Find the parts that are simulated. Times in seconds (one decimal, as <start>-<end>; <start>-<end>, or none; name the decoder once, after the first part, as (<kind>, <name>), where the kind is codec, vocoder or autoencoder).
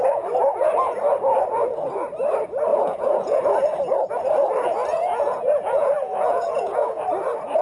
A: 2.7-3.4 (vocoder, Vocos); 4.9-7.0